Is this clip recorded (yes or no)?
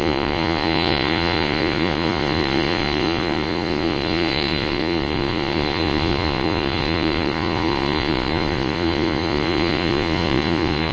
no